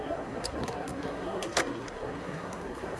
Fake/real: fake